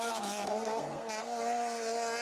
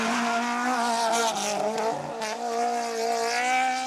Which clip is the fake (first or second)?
first